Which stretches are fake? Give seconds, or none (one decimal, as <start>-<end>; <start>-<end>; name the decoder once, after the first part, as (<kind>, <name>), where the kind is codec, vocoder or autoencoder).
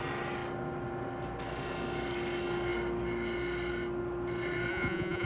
4.7-5.3 (vocoder, Vocos)